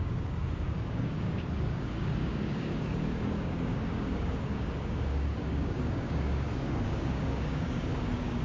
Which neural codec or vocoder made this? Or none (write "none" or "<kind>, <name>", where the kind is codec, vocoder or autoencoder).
codec, DAC